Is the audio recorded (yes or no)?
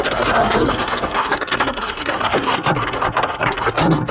no